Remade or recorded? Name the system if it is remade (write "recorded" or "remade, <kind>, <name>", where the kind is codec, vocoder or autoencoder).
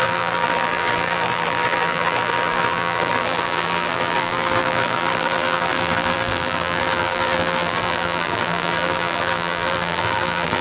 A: remade, vocoder, BigVGAN v2